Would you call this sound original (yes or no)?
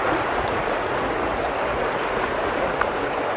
no